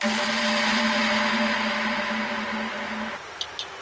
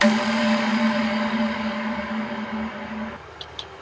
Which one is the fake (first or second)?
second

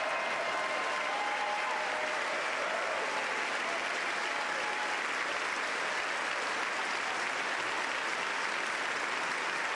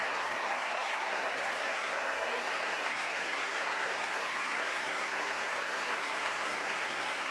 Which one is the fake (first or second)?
second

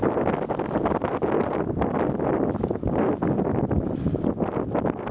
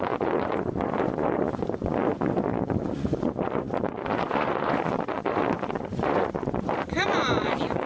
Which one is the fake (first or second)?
second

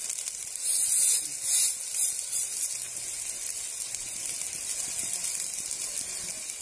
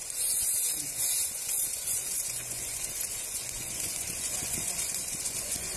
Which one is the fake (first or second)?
second